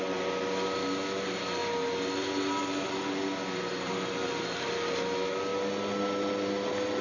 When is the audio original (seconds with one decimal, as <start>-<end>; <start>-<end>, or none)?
0.0-7.0